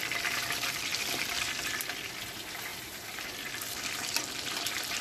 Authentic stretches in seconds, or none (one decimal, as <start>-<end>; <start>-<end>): 0.0-0.9; 1.7-2.7; 4.6-5.0